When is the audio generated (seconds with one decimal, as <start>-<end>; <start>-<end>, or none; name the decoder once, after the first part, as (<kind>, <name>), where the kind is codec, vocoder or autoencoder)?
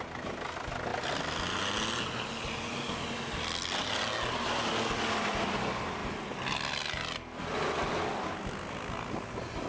none